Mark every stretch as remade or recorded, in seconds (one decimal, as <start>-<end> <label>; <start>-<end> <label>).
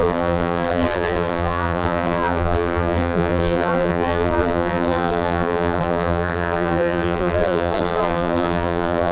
0.0-9.1 remade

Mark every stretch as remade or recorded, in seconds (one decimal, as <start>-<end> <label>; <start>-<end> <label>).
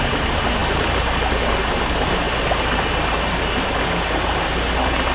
0.0-5.1 recorded